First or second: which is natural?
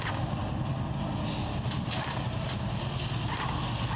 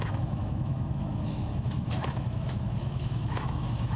first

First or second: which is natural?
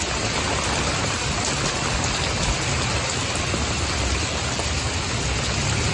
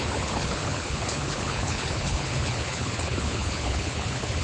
first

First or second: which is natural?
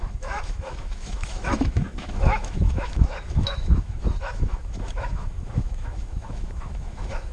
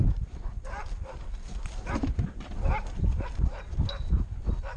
second